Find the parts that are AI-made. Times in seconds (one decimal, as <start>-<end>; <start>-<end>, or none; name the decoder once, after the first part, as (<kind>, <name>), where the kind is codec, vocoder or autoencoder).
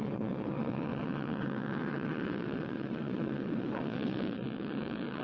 0.0-5.2 (vocoder, WaveNeXt)